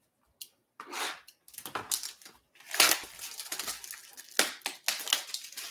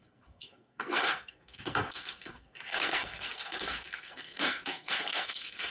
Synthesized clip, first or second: second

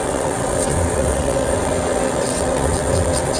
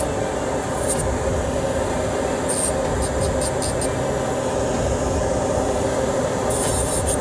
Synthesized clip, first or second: first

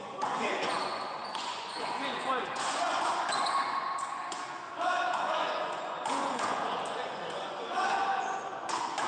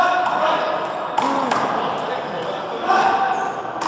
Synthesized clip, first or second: first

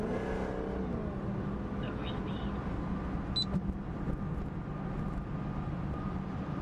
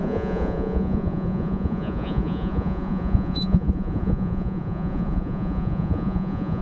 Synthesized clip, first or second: second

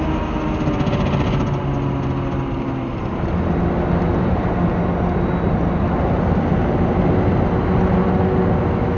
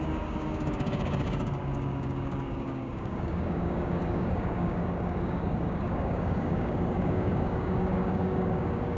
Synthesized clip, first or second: second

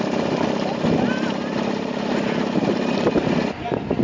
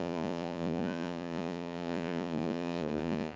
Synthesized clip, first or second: second